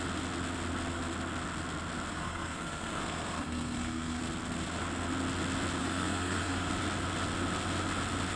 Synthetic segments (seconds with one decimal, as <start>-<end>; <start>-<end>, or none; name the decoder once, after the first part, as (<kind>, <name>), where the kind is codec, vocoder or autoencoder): 2.1-4.2 (codec, SNAC); 5.8-6.7